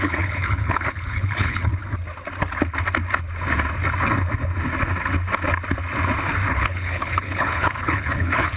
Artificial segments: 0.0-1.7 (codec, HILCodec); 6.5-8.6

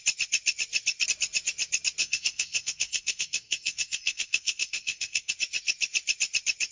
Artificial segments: 2.0-5.3 (codec, SNAC)

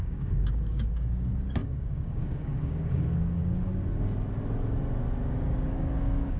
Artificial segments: 0.0-3.7 (codec, DAC); 5.7-6.4